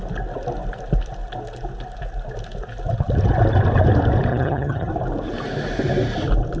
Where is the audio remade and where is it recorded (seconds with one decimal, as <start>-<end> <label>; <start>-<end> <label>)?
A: 0.0-4.3 recorded; 4.3-4.9 remade; 4.9-6.6 recorded